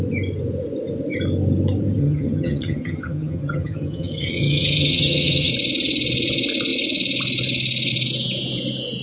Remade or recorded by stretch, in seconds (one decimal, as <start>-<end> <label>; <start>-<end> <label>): 0.0-2.0 recorded; 2.0-5.5 remade; 5.5-9.0 recorded